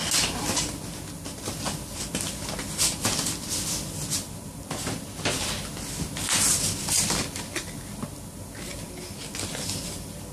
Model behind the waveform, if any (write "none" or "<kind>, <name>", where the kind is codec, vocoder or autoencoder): none